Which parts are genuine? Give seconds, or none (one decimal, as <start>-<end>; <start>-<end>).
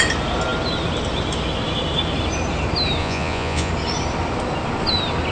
0.0-3.0; 3.7-5.3